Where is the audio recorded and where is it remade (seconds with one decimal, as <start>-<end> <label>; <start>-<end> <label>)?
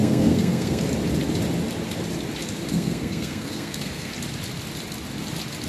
0.0-0.8 remade; 0.8-2.7 recorded; 2.7-4.1 remade; 4.1-5.7 recorded